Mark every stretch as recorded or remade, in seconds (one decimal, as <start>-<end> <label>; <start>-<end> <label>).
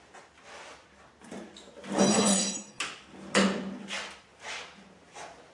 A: 0.0-2.1 recorded; 2.1-2.8 remade; 2.8-5.5 recorded